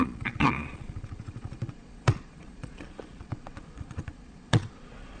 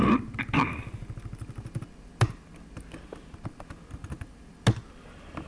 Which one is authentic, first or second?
second